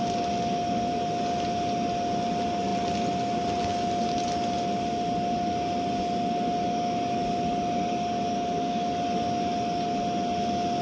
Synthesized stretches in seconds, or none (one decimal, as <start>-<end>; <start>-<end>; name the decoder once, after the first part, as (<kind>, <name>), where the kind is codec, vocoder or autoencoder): none